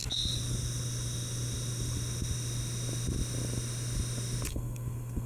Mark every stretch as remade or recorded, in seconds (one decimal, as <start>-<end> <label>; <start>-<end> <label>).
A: 0.0-4.5 recorded; 4.5-5.3 remade